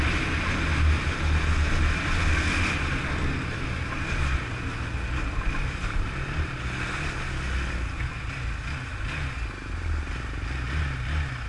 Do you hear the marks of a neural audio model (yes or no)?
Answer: no